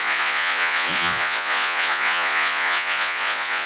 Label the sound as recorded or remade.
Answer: remade